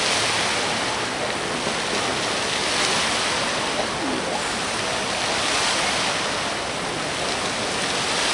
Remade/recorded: recorded